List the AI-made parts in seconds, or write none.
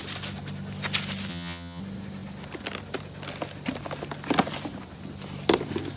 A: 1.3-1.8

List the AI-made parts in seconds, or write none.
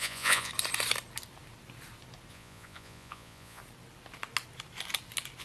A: 0.0-0.5; 2.3-3.6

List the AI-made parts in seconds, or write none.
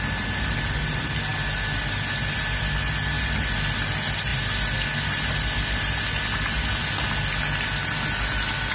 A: none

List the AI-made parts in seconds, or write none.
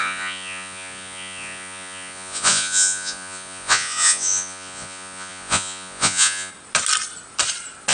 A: 0.0-6.5